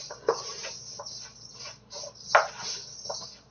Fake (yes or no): no